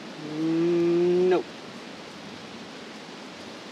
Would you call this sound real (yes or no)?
yes